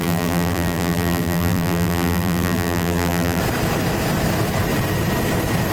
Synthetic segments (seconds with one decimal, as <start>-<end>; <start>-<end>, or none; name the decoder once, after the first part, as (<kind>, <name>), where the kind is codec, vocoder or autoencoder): 0.0-3.4 (vocoder, BigVGAN v2)